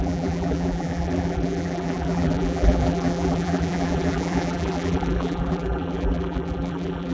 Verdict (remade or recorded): remade